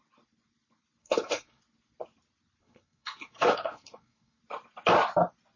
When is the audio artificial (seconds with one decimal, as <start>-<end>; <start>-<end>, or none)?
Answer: 1.0-1.6; 2.6-4.4